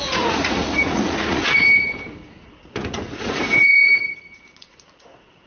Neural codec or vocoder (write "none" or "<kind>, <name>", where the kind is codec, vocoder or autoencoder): vocoder, Vocos